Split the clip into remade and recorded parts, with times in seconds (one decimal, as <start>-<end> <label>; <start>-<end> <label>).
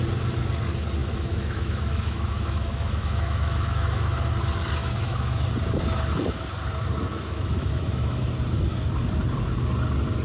0.0-1.0 recorded; 1.0-4.3 remade; 4.3-4.8 recorded; 4.8-5.5 remade; 5.5-7.1 recorded; 7.1-8.2 remade; 8.2-10.2 recorded